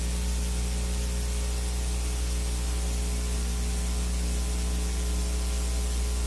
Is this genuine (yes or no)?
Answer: yes